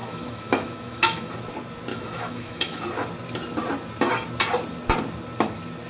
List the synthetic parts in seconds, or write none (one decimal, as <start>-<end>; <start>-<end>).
0.0-1.3; 1.9-2.8